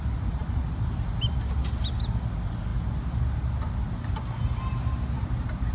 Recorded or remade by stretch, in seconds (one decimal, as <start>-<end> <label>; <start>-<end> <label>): 0.0-5.7 recorded